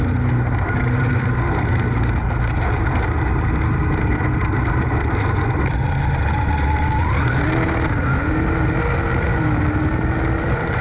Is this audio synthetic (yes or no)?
no